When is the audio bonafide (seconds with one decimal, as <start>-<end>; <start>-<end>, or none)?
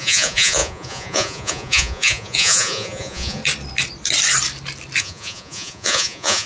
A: 3.4-5.0